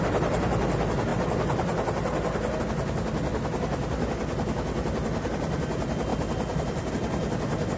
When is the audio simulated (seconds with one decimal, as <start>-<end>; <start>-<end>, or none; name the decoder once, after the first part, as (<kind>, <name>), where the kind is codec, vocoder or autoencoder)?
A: 6.1-6.9 (vocoder, BigVGAN v2)